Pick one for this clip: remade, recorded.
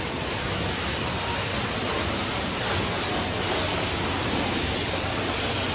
recorded